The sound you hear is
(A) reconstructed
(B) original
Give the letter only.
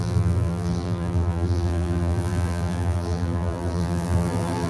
A